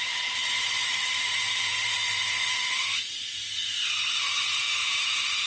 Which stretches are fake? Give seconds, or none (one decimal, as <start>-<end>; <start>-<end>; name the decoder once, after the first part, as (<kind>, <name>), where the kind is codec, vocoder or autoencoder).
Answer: 1.7-2.2 (vocoder, BigVGAN v2); 4.8-5.5

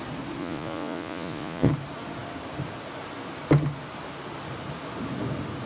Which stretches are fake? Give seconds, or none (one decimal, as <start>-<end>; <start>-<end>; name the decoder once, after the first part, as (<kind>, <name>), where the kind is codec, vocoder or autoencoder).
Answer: 0.4-1.7 (vocoder, Vocos)

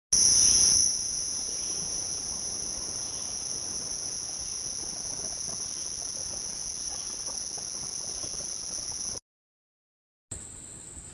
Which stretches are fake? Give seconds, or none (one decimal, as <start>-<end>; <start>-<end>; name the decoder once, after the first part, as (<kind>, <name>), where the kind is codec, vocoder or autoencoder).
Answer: none

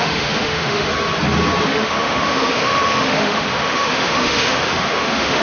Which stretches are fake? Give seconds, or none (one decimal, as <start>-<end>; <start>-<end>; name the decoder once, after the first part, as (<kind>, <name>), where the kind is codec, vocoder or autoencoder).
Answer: 0.0-0.9 (autoencoder, DAC-VAE); 1.6-5.4

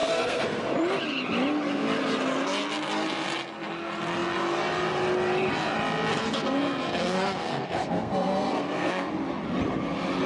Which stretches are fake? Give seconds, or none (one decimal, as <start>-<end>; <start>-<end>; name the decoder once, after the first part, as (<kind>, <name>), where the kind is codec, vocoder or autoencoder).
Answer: 0.0-0.6 (codec, SNAC); 6.1-9.1

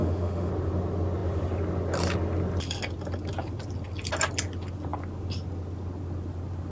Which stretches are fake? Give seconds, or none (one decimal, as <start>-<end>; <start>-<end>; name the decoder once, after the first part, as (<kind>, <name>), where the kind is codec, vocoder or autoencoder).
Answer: 0.0-0.5 (autoencoder, DAC-VAE)

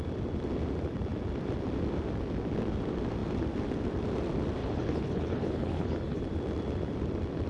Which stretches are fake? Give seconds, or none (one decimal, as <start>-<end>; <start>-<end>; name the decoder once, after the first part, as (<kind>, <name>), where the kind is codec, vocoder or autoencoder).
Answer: 4.6-6.2 (codec, HILCodec)